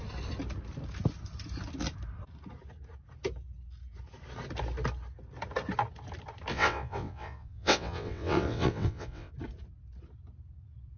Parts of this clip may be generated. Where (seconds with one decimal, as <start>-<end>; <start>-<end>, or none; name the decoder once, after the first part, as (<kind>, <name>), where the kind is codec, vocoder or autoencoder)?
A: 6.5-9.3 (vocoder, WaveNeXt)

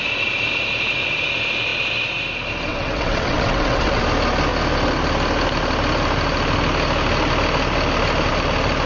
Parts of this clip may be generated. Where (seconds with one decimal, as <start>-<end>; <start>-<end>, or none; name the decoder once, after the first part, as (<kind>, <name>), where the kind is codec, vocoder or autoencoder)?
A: 2.7-4.0 (vocoder, WaveNeXt)

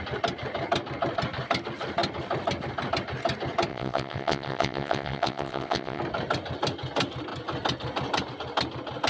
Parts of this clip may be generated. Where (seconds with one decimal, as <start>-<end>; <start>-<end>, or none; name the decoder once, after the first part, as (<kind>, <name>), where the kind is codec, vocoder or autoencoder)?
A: 3.7-6.0 (vocoder, WaveNeXt)

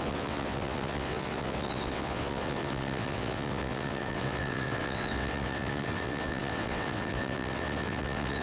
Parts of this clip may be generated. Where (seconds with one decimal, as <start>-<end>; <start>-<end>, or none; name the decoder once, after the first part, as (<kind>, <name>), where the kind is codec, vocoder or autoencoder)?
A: 0.0-8.4 (vocoder, WaveNeXt)

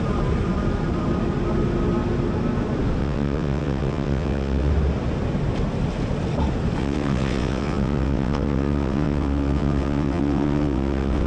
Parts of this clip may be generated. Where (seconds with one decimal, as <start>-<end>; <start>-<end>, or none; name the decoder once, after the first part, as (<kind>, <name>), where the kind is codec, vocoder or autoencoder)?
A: 3.0-4.7 (vocoder, WaveNeXt); 6.8-11.3

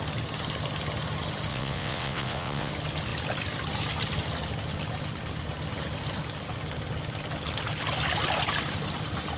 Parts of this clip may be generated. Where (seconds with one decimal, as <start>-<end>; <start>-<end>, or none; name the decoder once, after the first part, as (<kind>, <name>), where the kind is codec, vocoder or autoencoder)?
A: 1.5-2.7 (vocoder, WaveNeXt)

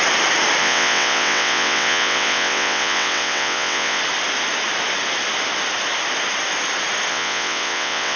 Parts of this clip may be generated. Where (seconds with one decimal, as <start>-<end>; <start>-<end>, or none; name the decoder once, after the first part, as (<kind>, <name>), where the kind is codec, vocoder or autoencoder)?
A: 0.6-4.0 (vocoder, WaveNeXt); 7.1-8.2

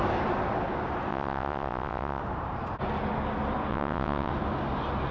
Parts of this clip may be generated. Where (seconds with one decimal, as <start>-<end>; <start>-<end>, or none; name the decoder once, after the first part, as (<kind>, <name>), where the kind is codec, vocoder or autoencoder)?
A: 1.1-2.2 (vocoder, WaveNeXt); 3.7-4.3